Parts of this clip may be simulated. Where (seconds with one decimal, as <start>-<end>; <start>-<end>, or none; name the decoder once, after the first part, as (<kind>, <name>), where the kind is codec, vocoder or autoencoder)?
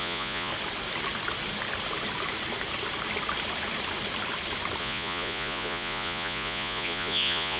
0.0-0.5 (vocoder, Vocos); 4.8-7.6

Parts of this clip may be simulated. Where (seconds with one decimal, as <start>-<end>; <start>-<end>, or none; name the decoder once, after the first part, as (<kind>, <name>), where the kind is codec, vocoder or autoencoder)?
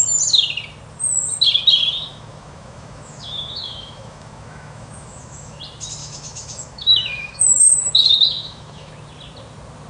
2.1-5.6 (autoencoder, DAC-VAE); 6.0-8.9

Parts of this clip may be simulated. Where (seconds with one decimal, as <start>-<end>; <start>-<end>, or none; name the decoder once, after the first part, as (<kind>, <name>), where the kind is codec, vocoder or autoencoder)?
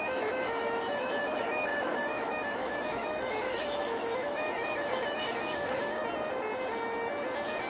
0.0-6.0 (autoencoder, DAC-VAE)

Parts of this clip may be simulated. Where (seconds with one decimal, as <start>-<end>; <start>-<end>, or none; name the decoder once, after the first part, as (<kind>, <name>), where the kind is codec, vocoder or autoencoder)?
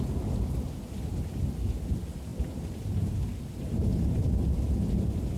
2.3-3.5 (vocoder, BigVGAN v2); 3.9-5.4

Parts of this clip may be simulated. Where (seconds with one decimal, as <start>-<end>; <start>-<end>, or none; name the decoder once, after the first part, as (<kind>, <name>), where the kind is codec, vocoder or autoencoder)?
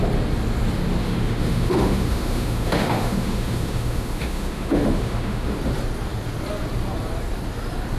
1.0-5.6 (autoencoder, DAC-VAE)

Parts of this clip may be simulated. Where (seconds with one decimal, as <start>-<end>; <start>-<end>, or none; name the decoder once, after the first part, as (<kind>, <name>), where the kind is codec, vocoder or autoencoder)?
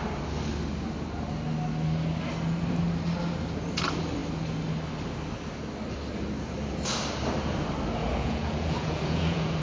8.0-9.6 (vocoder, Vocos)